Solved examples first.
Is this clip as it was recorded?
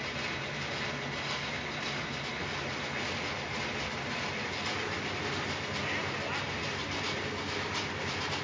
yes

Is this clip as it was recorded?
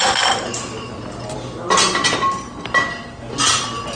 yes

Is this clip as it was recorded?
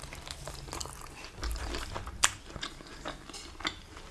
yes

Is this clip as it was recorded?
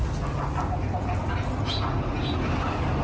yes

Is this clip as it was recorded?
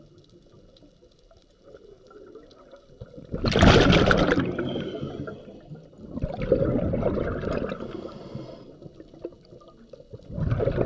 yes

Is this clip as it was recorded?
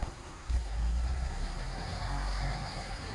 no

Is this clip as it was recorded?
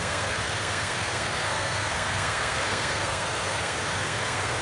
no